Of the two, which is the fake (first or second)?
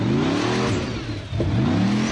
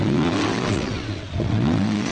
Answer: second